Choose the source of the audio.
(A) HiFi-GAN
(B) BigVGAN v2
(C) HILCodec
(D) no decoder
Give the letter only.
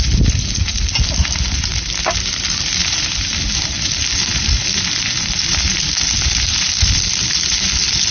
D